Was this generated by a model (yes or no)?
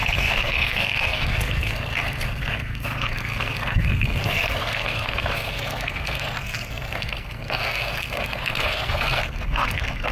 yes